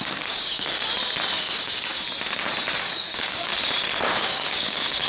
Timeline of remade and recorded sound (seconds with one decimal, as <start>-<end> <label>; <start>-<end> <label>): 0.0-0.8 remade; 0.8-1.4 recorded; 1.4-1.9 remade; 1.9-2.8 recorded; 2.8-3.5 remade; 3.5-4.0 recorded; 4.0-5.1 remade